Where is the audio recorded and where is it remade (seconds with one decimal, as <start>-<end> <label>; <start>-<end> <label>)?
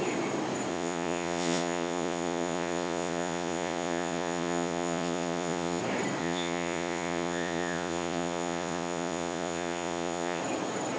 0.0-0.7 recorded; 0.7-5.8 remade; 5.8-6.2 recorded; 6.2-10.4 remade; 10.4-11.0 recorded